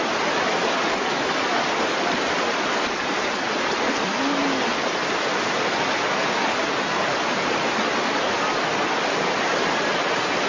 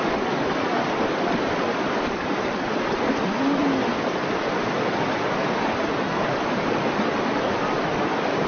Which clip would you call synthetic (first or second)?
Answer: second